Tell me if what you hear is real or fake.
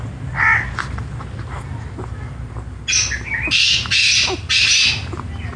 real